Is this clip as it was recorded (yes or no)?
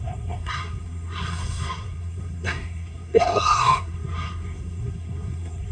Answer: no